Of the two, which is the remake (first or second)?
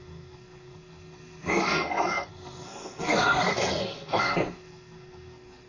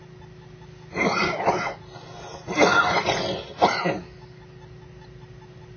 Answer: first